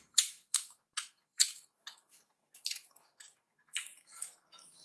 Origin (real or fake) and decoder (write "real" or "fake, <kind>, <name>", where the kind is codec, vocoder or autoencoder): fake, autoencoder, DAC-VAE